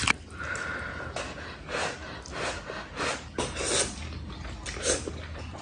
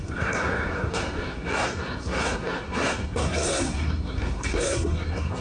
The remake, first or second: second